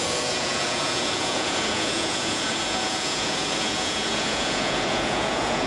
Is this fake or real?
fake